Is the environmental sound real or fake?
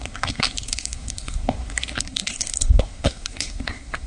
fake